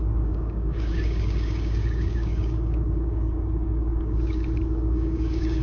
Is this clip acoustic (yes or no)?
no